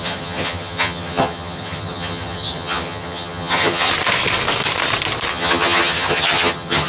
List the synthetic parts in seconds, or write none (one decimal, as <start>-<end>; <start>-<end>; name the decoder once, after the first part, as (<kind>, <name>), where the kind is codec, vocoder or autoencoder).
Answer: 0.0-3.9 (vocoder, HiFi-GAN); 5.3-6.9